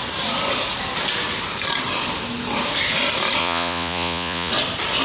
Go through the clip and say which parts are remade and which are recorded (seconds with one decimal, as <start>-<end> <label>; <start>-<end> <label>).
0.0-3.4 recorded; 3.4-4.5 remade; 4.5-5.0 recorded